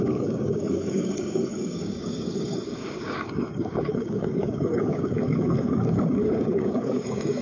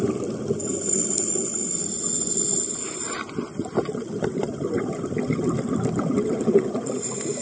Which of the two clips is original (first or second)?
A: second